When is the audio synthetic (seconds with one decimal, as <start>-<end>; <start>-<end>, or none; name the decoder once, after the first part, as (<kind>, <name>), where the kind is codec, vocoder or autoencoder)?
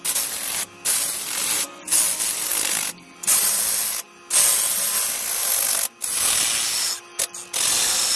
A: none